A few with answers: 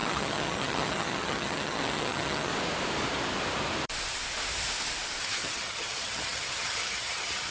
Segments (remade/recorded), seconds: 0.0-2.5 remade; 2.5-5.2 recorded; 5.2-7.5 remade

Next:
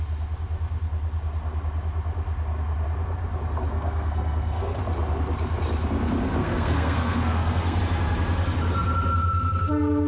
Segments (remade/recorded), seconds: 0.0-3.7 recorded; 3.7-4.8 remade; 4.8-6.4 recorded; 6.4-7.8 remade; 7.8-10.1 recorded